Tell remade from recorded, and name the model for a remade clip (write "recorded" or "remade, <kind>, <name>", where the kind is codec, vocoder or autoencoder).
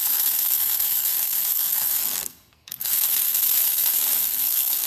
remade, codec, SNAC